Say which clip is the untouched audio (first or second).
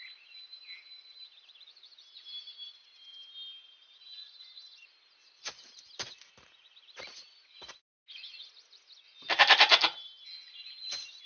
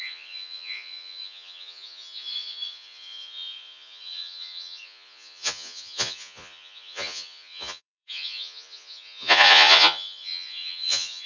first